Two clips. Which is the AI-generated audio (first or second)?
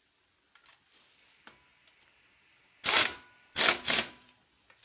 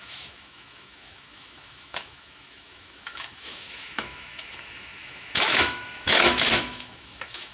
second